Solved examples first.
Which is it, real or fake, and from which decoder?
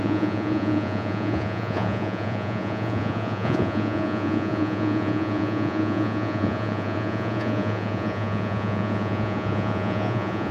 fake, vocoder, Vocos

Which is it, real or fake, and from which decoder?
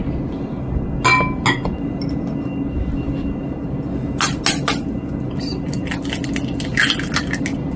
real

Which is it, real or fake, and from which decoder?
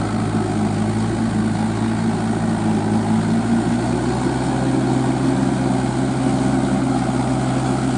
real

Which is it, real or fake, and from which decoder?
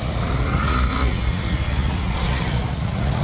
fake, vocoder, Vocos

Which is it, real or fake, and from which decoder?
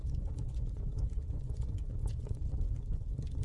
fake, vocoder, Vocos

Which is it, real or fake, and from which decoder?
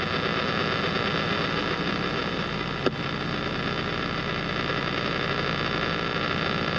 real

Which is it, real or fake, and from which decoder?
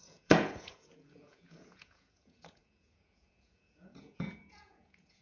fake, vocoder, Vocos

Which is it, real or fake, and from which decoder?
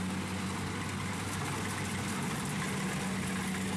real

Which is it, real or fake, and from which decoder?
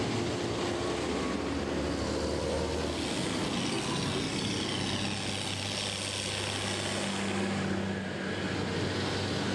real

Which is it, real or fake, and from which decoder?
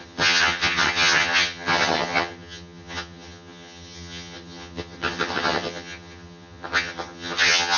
fake, vocoder, HiFi-GAN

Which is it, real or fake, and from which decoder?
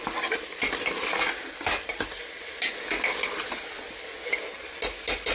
real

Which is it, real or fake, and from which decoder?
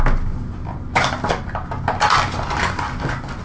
real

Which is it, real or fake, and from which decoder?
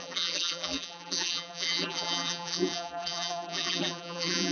fake, vocoder, BigVGAN v2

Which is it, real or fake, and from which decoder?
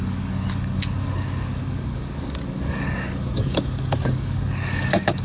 fake, codec, DAC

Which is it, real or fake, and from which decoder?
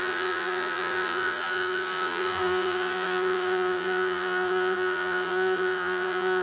fake, vocoder, BigVGAN v2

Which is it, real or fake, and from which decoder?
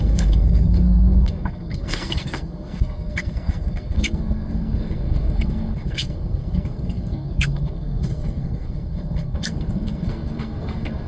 fake, codec, SNAC